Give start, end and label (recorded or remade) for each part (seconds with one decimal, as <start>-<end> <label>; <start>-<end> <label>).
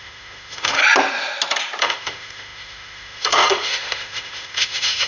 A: 0.0-0.8 remade; 0.8-1.8 recorded; 1.8-5.1 remade